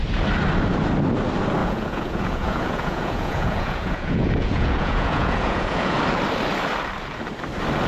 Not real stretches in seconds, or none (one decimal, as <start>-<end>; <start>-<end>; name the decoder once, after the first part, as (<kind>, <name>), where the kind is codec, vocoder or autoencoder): 1.6-6.0 (vocoder, Vocos)